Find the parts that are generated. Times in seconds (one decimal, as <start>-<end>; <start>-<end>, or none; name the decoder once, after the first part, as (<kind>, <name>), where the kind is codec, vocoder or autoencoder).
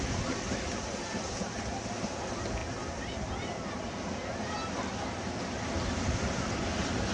none